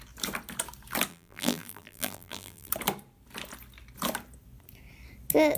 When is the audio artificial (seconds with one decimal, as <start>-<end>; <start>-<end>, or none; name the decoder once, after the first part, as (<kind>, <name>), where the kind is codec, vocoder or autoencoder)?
1.1-2.7 (vocoder, BigVGAN v2)

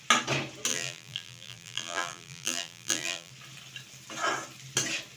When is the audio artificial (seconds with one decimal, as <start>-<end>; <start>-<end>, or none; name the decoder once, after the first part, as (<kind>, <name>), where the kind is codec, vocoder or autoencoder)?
0.7-3.3 (vocoder, BigVGAN v2)

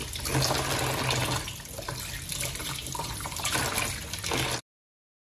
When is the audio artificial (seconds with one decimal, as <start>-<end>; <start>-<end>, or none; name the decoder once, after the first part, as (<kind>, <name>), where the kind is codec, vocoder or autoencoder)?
2.6-3.6 (vocoder, BigVGAN v2)

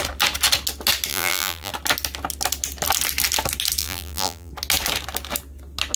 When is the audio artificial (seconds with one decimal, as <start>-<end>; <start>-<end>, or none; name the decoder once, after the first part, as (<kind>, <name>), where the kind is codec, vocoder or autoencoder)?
1.1-1.7 (vocoder, BigVGAN v2); 3.8-4.5

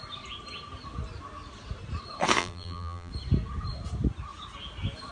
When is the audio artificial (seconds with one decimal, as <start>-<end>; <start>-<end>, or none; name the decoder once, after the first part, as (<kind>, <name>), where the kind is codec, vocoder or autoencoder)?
2.4-3.1 (vocoder, BigVGAN v2)